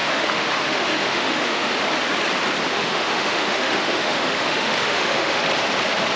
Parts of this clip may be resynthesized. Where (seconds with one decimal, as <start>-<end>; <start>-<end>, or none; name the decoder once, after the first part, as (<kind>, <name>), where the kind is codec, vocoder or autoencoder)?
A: 0.0-1.7 (autoencoder, DAC-VAE); 2.7-5.4